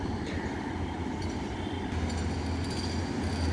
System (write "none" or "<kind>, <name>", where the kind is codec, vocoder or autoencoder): none